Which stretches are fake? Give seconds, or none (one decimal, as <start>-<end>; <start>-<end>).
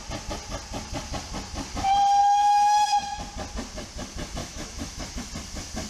2.2-3.2; 4.4-5.2